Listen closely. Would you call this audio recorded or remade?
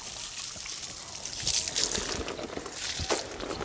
recorded